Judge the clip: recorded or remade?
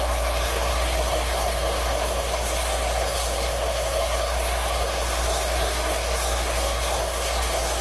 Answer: remade